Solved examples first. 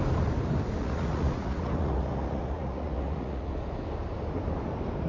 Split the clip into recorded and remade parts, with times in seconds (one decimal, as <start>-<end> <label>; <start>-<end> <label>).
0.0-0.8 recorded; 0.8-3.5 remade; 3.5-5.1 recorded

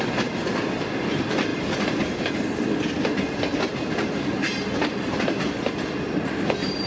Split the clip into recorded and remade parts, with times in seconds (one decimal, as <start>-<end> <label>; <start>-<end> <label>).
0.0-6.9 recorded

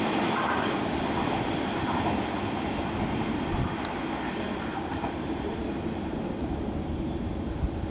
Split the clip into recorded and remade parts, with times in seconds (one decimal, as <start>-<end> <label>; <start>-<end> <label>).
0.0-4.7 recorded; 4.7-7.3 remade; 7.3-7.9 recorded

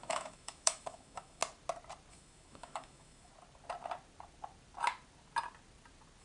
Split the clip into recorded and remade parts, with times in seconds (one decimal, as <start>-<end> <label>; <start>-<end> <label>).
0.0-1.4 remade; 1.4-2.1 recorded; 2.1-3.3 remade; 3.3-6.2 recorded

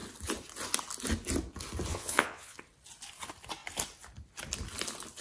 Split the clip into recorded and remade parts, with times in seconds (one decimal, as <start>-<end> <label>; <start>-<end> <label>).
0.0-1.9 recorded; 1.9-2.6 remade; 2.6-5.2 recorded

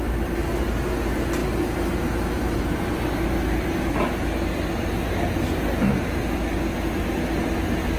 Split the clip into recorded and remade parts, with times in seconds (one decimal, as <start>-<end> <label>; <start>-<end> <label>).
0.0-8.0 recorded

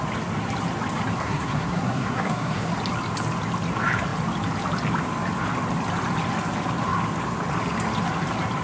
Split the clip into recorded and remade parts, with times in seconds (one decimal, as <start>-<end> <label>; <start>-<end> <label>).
0.0-1.2 recorded; 1.2-2.7 remade; 2.7-8.6 recorded

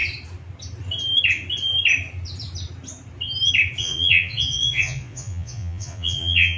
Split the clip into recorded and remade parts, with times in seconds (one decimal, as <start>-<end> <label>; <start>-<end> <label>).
0.0-3.8 recorded; 3.8-6.6 remade